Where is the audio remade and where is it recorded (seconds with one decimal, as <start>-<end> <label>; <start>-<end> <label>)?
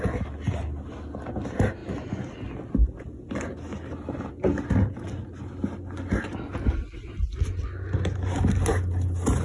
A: 0.0-9.4 recorded